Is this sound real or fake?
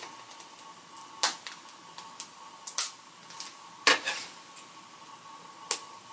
real